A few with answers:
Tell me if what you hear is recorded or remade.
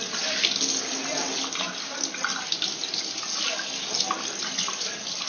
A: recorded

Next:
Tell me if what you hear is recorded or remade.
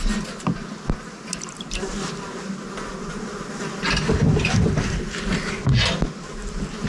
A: recorded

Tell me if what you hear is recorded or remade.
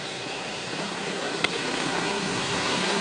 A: remade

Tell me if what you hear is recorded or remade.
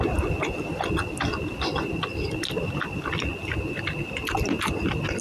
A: recorded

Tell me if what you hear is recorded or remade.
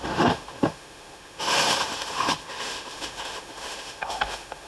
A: remade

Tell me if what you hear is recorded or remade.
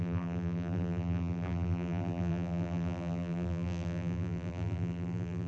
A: remade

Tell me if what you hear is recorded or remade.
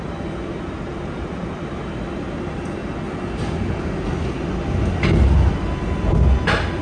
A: recorded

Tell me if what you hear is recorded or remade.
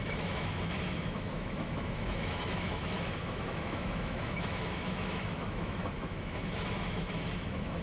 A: remade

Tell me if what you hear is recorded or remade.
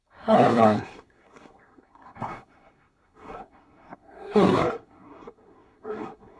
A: remade